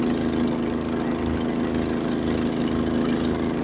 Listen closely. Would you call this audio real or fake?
real